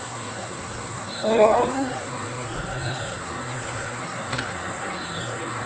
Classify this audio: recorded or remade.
remade